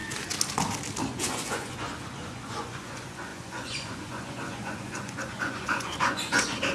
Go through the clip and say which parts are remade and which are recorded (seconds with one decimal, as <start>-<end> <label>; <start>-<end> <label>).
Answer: 0.0-1.1 recorded; 1.1-6.7 remade